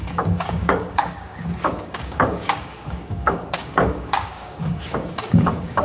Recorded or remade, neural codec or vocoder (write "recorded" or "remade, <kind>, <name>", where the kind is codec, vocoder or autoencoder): remade, codec, DAC